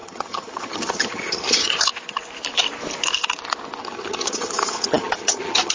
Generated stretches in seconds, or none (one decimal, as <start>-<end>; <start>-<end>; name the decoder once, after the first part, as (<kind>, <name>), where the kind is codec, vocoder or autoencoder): 0.0-1.9 (vocoder, HiFi-GAN); 3.8-5.7